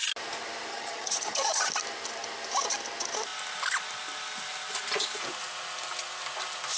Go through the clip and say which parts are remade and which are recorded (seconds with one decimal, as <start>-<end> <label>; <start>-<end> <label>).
0.0-0.7 recorded; 0.7-1.7 remade; 1.7-6.8 recorded